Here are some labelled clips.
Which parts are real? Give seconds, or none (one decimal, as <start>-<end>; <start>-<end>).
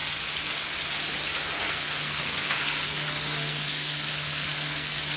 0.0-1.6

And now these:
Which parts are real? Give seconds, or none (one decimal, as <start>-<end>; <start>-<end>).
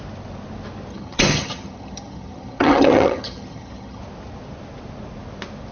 0.0-0.9; 4.0-5.7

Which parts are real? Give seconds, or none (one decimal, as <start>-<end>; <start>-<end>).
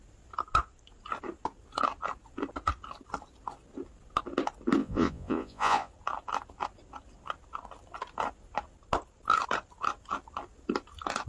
0.0-4.8; 5.9-11.3